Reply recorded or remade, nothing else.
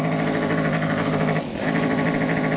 recorded